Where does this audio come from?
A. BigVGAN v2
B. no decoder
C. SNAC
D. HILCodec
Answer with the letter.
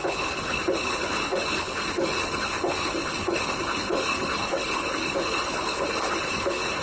D